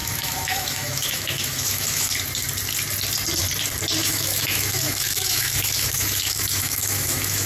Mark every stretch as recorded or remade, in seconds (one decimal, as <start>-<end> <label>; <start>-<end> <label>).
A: 0.0-2.1 remade; 2.1-4.0 recorded; 4.0-7.5 remade